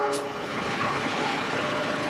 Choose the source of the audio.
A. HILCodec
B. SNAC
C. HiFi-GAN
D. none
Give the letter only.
A